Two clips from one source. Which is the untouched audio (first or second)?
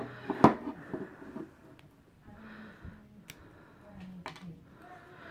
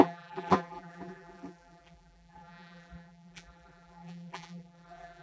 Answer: first